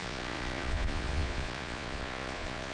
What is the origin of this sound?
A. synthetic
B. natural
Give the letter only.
A